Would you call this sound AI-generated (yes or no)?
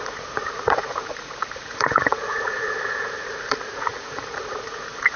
yes